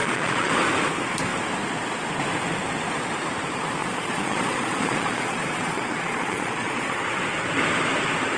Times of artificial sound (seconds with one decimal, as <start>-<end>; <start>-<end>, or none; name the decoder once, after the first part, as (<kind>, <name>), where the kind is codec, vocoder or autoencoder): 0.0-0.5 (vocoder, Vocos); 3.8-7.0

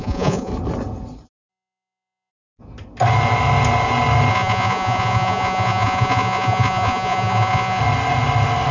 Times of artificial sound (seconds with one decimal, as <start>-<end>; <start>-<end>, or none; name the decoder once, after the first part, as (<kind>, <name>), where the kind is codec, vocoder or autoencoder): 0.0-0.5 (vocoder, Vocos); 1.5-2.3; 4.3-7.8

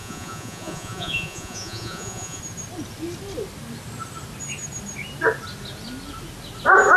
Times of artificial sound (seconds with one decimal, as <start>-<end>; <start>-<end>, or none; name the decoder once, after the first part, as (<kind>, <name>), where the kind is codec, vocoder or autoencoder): 0.0-2.4 (vocoder, Vocos)

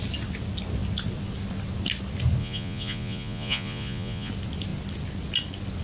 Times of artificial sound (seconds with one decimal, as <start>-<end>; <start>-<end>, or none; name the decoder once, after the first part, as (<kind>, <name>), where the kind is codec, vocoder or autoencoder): 2.4-4.3 (vocoder, Vocos)

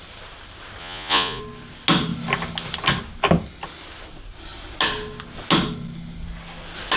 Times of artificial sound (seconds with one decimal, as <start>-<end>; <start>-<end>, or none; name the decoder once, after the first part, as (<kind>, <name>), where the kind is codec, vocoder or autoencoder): 0.8-1.4 (vocoder, Vocos)

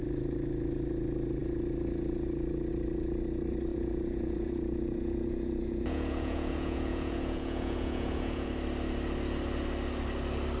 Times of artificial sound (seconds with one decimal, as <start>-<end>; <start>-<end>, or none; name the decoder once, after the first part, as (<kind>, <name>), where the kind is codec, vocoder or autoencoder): 3.7-8.5 (vocoder, Vocos)